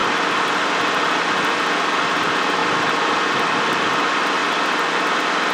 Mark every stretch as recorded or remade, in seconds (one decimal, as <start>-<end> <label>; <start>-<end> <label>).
0.0-2.6 recorded; 2.6-3.9 remade; 3.9-5.5 recorded